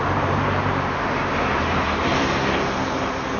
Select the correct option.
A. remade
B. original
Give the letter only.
A